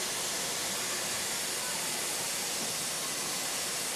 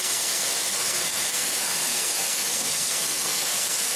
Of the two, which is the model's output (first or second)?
second